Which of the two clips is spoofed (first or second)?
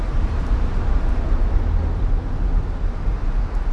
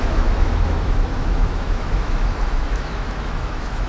second